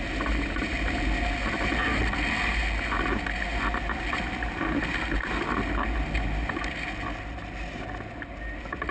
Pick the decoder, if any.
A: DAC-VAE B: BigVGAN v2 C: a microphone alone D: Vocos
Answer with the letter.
C